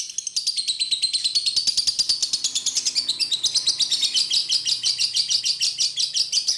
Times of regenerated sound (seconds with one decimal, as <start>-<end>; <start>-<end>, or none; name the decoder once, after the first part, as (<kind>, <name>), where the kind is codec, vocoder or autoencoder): none